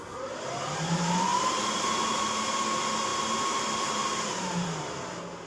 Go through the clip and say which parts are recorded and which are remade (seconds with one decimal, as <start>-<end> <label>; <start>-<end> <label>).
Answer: 0.0-1.3 recorded; 1.3-2.4 remade; 2.4-3.1 recorded; 3.1-4.8 remade; 4.8-5.5 recorded